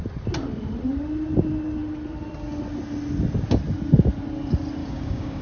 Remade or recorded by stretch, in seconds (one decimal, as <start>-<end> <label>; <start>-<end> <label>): 0.0-4.8 recorded; 4.8-5.4 remade

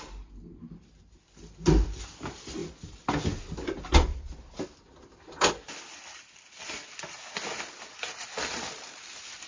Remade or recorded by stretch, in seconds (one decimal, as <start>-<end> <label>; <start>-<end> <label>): 0.0-9.5 recorded

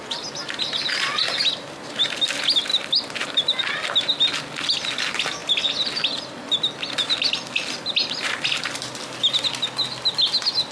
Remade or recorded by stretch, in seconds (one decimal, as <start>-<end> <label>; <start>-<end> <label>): 0.0-2.7 recorded; 2.7-3.6 remade; 3.6-5.4 recorded; 5.4-7.5 remade; 7.5-10.7 recorded

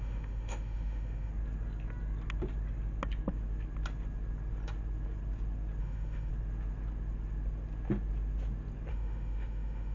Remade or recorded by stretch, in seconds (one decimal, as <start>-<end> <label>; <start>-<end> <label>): 0.0-1.3 remade; 1.3-5.8 recorded; 5.8-6.3 remade; 6.3-8.9 recorded; 8.9-9.9 remade

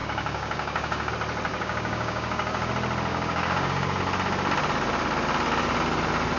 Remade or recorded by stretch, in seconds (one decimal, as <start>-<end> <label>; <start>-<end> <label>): 0.0-1.1 remade; 1.1-1.5 recorded; 1.5-2.7 remade; 2.7-3.1 recorded; 3.1-4.0 remade; 4.0-6.4 recorded

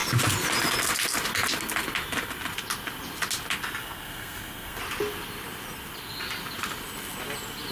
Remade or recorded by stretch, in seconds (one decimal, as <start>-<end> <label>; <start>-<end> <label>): 0.0-3.8 recorded; 3.8-4.8 remade; 4.8-7.7 recorded

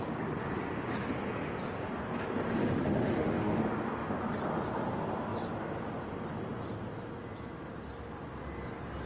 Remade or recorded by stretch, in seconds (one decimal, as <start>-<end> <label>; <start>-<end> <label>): 0.0-2.6 recorded; 2.6-3.6 remade; 3.6-9.1 recorded